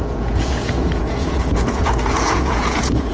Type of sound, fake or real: fake